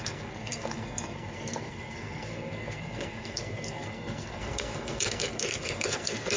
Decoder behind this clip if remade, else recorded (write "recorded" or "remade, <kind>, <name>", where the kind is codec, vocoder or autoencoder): remade, codec, SNAC